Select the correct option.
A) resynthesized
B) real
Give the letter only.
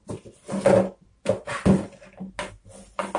B